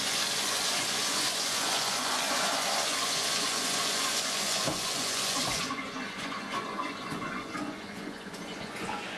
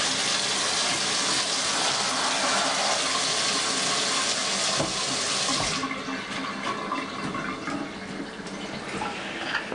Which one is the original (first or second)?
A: second